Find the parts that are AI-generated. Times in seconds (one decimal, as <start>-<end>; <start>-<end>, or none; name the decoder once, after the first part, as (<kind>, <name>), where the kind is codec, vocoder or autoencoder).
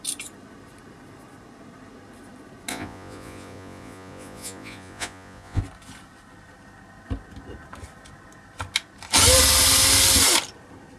2.7-5.6 (vocoder, Vocos)